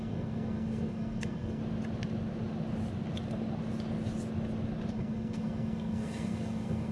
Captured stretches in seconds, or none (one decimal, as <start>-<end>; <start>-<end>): 1.6-4.9